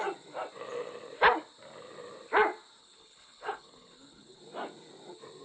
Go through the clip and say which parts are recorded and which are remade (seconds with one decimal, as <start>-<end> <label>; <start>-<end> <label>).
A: 0.0-2.8 recorded; 2.8-4.4 remade; 4.4-5.4 recorded